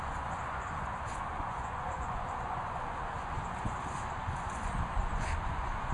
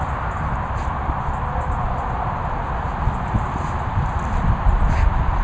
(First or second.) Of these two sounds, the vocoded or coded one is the first